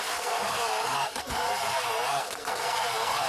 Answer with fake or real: fake